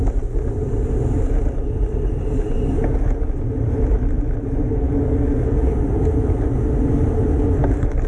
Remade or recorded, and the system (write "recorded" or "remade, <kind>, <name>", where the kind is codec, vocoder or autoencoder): recorded